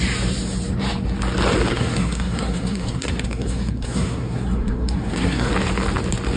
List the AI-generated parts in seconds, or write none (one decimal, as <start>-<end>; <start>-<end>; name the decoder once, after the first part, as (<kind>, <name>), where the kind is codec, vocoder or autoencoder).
1.7-5.5 (codec, SNAC)